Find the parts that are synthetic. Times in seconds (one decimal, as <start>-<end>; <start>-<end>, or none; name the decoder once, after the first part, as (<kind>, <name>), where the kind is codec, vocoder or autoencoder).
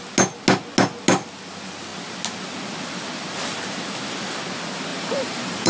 4.9-5.7 (vocoder, BigVGAN v2)